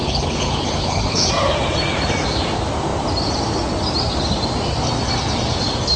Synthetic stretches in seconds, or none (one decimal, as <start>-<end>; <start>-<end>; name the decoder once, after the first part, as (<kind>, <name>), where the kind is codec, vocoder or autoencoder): 0.0-1.3 (codec, HILCodec)